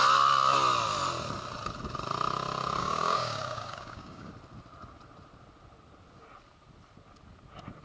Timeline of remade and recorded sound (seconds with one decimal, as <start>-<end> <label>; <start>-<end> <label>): 0.0-2.8 recorded; 2.8-4.3 remade; 4.3-7.8 recorded